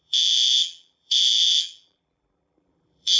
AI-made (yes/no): yes